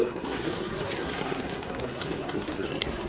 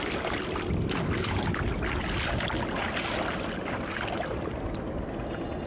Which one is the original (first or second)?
second